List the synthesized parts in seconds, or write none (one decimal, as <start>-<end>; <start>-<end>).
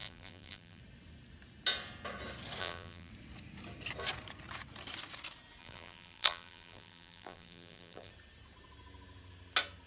0.0-0.8; 2.6-3.1; 5.6-8.1